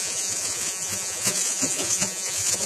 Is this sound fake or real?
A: fake